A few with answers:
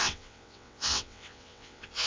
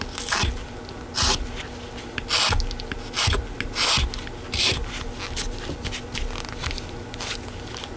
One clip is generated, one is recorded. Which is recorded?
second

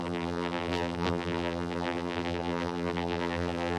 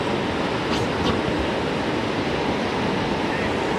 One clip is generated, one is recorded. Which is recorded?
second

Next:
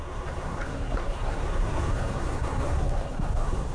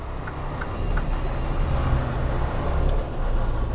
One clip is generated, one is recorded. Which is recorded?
second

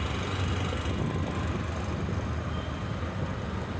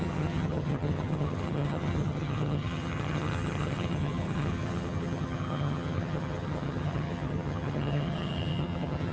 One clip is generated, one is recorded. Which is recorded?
first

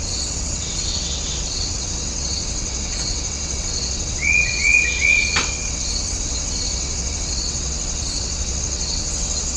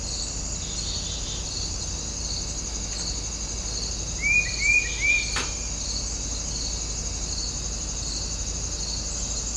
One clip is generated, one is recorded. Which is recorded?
second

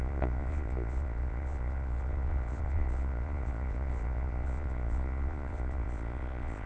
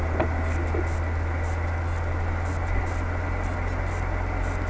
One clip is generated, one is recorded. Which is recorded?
second